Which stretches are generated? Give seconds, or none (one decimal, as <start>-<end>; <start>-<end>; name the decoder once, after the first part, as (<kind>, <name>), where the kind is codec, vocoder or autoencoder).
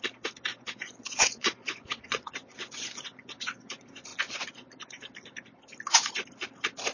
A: 0.5-3.4 (vocoder, Vocos); 4.1-5.0